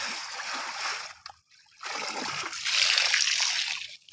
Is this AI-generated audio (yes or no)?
no